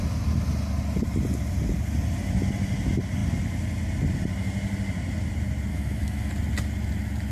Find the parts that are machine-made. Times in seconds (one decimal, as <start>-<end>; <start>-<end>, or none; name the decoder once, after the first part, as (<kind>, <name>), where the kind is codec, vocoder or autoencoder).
5.7-6.3 (autoencoder, DAC-VAE)